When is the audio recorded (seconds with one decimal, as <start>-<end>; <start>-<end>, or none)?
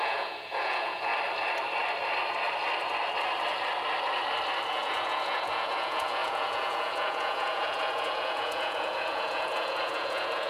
1.1-4.7